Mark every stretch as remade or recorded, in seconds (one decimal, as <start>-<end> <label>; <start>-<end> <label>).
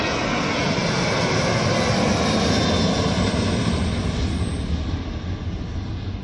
0.0-6.2 recorded